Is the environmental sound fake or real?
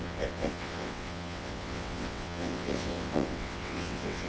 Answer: fake